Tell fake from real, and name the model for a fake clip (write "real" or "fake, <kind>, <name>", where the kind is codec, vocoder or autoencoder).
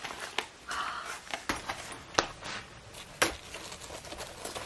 real